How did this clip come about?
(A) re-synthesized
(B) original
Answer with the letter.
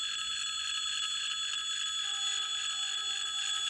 B